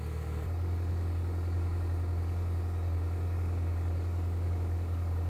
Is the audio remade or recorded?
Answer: remade